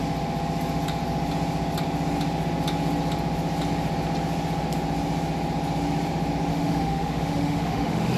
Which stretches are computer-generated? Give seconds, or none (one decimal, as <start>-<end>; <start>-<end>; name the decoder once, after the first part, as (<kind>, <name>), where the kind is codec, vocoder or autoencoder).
6.5-8.2 (autoencoder, DAC-VAE)